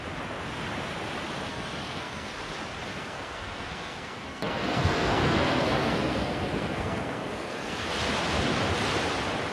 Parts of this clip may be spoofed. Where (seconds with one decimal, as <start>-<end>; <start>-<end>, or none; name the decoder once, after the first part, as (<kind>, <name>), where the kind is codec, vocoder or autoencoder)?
1.5-2.3 (codec, SNAC); 2.9-7.9